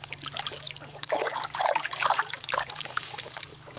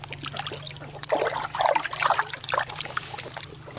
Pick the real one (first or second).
second